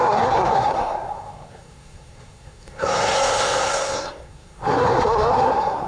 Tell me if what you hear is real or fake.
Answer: fake